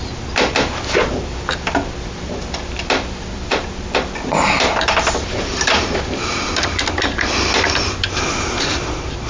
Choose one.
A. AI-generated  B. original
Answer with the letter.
A